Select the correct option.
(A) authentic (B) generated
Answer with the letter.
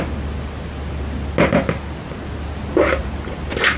A